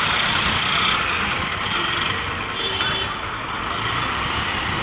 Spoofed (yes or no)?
yes